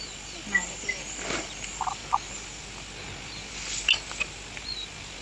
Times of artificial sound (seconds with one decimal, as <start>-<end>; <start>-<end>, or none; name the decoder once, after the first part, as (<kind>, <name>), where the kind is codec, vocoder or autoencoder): 0.0-2.0 (vocoder, BigVGAN v2)